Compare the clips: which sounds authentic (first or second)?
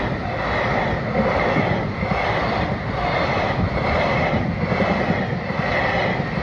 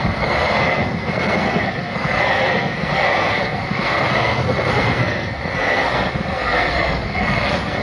first